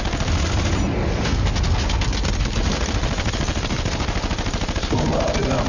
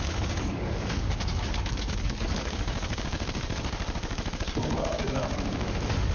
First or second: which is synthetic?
second